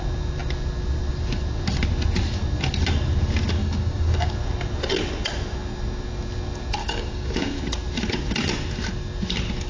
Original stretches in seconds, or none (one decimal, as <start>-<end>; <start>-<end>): 0.0-3.6; 4.3-6.8; 7.6-9.7